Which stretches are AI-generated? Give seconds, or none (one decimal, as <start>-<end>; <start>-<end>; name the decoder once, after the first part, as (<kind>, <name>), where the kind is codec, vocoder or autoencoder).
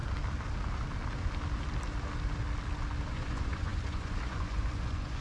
3.1-5.2 (vocoder, Vocos)